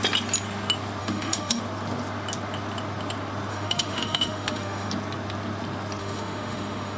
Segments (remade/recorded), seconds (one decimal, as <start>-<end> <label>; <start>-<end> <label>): 0.0-1.0 recorded; 1.0-1.6 remade; 1.6-3.5 recorded; 3.5-4.9 remade; 4.9-6.0 recorded; 6.0-7.0 remade